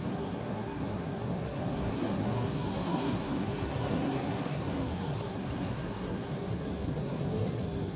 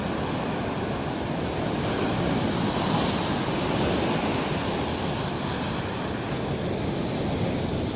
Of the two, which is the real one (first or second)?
second